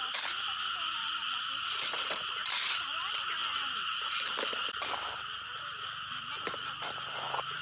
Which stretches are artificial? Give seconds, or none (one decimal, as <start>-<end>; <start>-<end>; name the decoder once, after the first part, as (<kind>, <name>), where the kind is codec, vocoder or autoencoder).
1.0-2.2 (vocoder, BigVGAN v2); 3.4-6.9